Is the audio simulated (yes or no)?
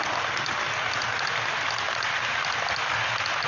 no